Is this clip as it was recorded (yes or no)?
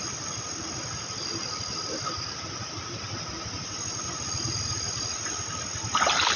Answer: yes